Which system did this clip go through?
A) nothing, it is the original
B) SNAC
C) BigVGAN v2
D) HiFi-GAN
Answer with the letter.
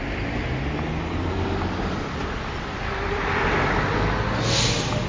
A